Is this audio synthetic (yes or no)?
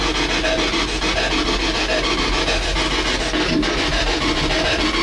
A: no